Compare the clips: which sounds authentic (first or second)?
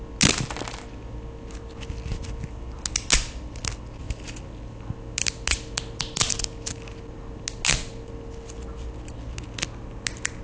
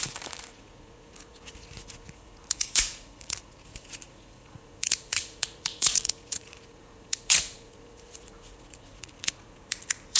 first